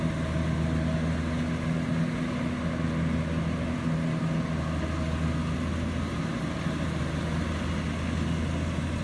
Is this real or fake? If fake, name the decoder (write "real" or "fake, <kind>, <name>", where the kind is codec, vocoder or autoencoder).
real